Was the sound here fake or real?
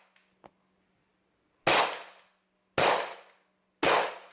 real